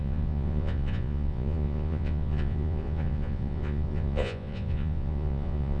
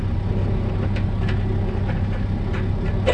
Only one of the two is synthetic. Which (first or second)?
first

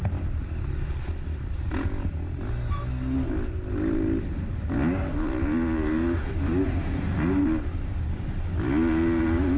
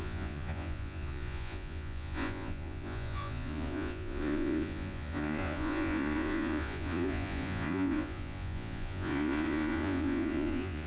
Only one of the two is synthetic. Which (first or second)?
second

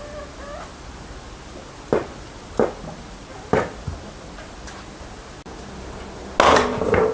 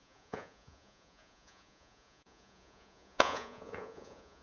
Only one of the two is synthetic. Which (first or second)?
second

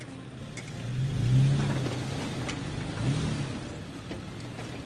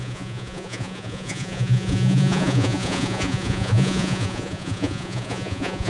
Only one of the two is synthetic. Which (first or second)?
second